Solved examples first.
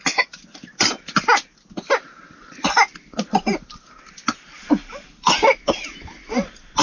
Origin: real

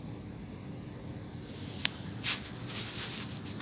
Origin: real